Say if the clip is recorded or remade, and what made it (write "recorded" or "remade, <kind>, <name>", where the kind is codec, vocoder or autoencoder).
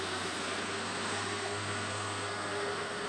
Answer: remade, codec, SNAC